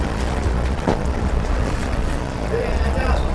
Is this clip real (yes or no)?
no